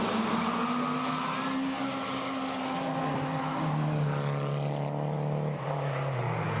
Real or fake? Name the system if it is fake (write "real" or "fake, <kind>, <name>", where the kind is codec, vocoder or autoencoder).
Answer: real